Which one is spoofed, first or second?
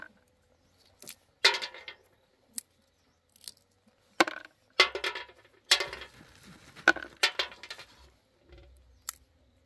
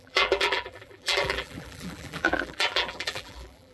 second